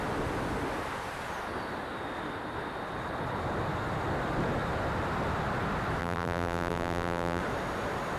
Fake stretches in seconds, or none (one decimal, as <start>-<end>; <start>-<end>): 6.0-7.4